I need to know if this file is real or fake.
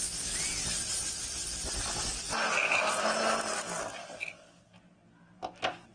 real